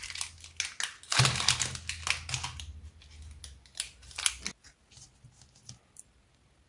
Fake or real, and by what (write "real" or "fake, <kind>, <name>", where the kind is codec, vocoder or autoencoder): real